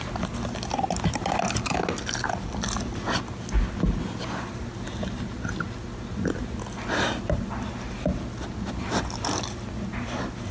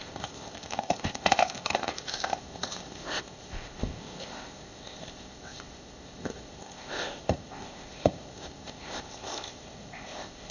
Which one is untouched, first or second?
first